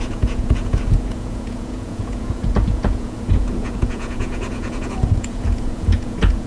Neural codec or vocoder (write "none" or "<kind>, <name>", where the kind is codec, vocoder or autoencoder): vocoder, Vocos